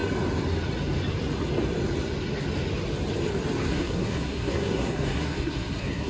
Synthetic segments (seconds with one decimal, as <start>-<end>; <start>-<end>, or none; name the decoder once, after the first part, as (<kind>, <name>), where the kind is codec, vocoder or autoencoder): 3.7-6.1 (codec, SNAC)